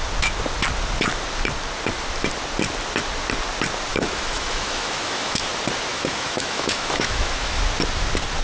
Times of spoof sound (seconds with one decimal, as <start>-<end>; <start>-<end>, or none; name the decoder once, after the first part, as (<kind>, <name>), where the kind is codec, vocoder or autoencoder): 3.9-5.5 (autoencoder, DAC-VAE); 5.9-7.6